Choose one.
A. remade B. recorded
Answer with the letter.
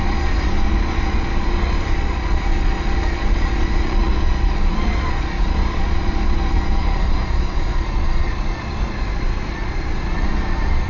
A